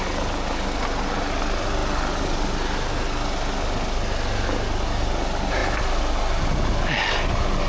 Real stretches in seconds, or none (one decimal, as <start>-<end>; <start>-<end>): 0.0-7.7